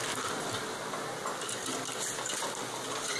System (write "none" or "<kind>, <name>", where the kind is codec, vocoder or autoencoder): none